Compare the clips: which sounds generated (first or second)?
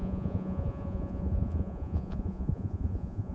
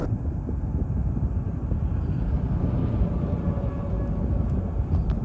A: first